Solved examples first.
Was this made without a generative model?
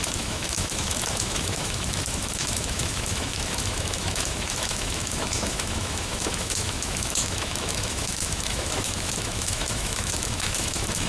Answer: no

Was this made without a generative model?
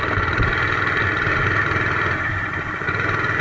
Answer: yes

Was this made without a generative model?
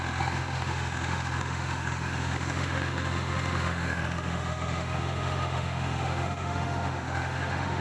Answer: no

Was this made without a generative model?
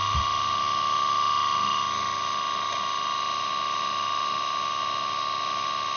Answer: no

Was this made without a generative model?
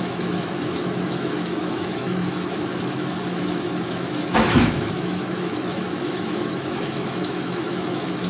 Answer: no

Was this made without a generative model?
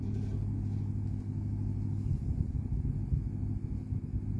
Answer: yes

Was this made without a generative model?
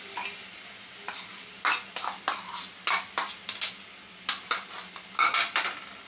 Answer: yes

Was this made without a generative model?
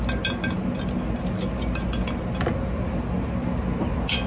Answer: yes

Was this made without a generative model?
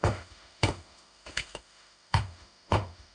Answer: no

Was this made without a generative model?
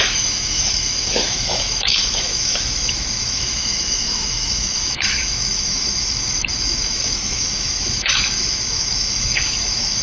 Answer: no